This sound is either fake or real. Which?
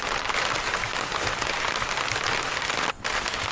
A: real